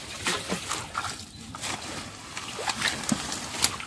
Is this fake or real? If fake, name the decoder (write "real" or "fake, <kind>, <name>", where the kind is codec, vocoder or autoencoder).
real